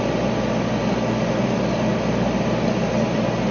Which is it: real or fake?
real